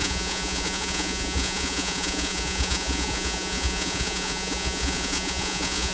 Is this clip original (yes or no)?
no